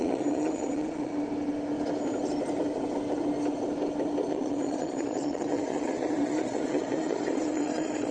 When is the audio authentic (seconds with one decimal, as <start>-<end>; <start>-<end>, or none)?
1.1-4.3